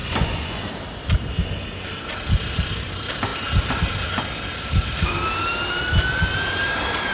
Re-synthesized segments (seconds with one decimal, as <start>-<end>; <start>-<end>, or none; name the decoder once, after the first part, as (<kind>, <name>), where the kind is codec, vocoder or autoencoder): 0.0-0.7 (vocoder, Vocos)